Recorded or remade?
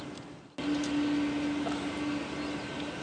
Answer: recorded